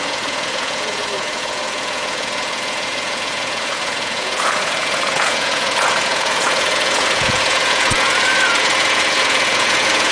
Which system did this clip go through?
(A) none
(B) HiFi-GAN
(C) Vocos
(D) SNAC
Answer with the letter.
C